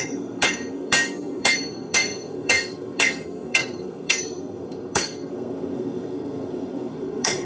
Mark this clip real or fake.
fake